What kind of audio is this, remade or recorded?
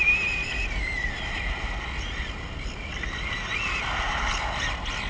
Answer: recorded